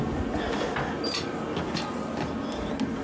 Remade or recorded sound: recorded